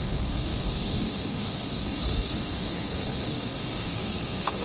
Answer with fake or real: fake